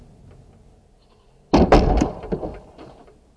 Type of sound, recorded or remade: recorded